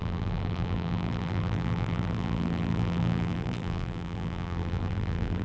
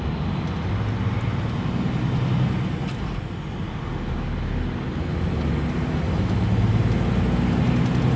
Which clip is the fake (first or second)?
first